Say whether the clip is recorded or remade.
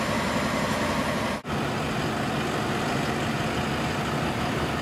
recorded